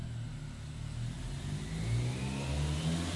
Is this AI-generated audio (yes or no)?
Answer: no